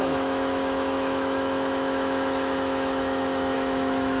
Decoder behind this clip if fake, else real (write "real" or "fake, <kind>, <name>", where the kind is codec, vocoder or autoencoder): fake, autoencoder, DAC-VAE